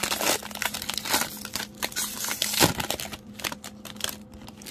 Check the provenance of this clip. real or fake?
real